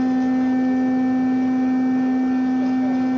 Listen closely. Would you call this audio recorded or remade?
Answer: recorded